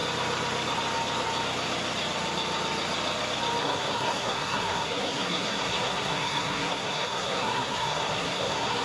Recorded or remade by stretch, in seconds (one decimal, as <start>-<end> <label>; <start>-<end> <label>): 0.0-3.6 recorded; 3.6-8.8 remade